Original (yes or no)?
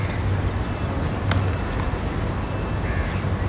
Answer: yes